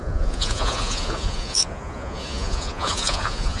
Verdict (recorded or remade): remade